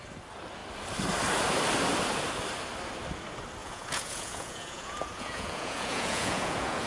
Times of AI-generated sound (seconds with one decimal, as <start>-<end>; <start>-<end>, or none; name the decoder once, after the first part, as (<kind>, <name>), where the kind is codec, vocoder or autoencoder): 3.6-6.9 (vocoder, Vocos)